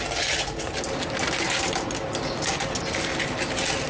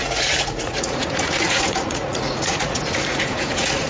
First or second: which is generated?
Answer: second